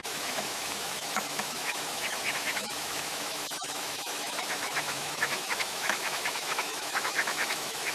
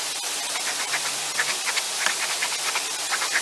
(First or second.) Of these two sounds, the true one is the second